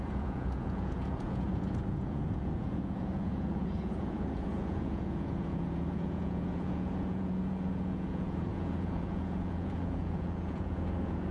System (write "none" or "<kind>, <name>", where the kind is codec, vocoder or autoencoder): vocoder, Vocos